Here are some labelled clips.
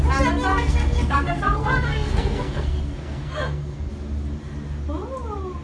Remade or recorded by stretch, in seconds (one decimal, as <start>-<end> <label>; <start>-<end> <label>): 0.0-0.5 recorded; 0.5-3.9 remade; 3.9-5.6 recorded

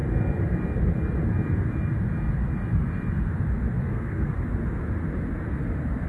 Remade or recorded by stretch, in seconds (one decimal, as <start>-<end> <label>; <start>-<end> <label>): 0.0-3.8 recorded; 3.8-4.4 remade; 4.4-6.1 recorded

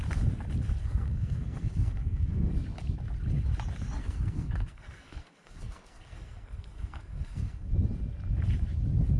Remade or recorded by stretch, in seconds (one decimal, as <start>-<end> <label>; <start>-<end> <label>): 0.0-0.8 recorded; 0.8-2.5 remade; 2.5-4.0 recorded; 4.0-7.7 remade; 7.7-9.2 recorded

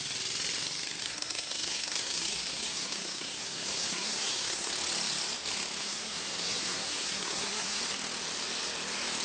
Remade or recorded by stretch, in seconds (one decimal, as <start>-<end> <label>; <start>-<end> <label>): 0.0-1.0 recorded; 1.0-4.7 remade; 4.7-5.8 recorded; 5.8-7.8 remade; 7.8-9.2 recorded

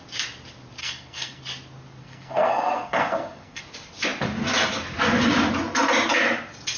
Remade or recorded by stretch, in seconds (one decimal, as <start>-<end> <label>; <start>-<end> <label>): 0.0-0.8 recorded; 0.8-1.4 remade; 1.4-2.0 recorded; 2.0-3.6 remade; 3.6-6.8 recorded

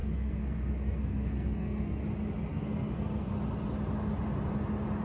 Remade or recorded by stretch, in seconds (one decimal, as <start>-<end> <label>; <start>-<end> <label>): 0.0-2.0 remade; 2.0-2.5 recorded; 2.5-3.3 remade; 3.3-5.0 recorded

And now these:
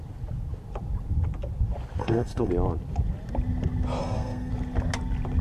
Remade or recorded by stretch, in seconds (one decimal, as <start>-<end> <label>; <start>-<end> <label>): 0.0-2.0 recorded; 2.0-2.5 remade; 2.5-4.0 recorded; 4.0-4.5 remade; 4.5-5.4 recorded